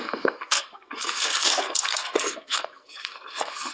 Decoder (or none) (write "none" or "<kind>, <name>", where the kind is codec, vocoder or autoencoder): codec, SNAC